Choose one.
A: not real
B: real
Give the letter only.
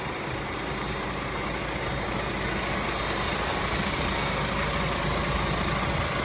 B